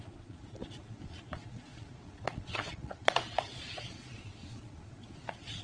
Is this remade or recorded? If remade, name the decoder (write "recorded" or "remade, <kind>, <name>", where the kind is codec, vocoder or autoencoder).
remade, vocoder, Vocos